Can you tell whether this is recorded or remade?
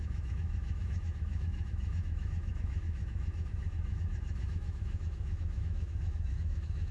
remade